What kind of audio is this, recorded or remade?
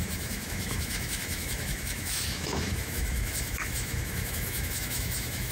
remade